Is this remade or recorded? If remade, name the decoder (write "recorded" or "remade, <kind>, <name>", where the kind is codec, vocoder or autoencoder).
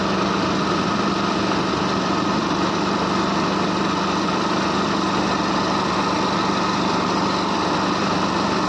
remade, vocoder, BigVGAN v2